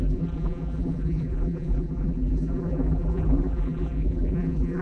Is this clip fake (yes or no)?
yes